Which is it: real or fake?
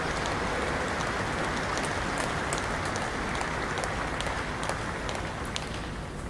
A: real